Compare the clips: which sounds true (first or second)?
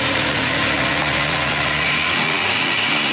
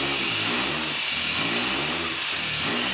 second